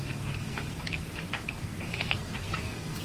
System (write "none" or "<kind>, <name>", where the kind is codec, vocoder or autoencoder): codec, SNAC